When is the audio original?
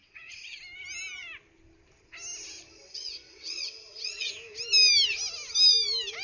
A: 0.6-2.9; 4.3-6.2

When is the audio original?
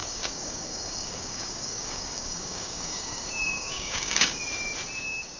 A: 4.4-5.0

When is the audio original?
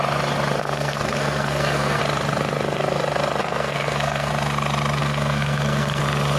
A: 0.0-0.6; 2.0-3.4; 4.3-5.0; 6.0-6.4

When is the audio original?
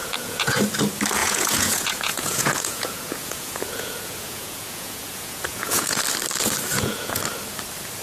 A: 0.6-1.2; 6.0-6.7; 7.2-8.0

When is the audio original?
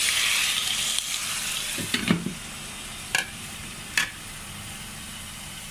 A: 0.0-0.6; 4.0-5.7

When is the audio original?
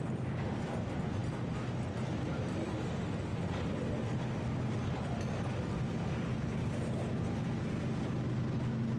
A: 0.0-9.0